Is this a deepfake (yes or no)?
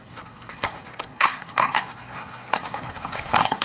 yes